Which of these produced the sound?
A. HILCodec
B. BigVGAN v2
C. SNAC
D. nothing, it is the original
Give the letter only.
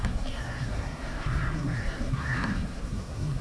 C